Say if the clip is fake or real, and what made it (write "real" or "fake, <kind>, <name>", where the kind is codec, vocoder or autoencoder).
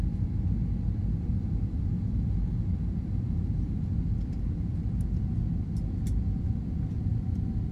real